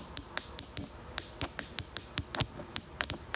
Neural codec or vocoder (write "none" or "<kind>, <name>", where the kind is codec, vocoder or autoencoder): none